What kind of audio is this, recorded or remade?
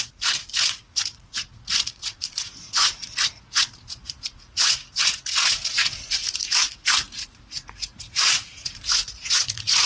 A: remade